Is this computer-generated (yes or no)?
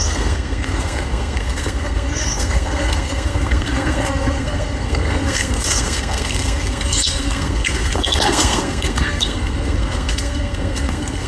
yes